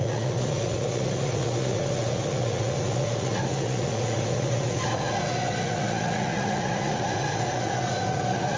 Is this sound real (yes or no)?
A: no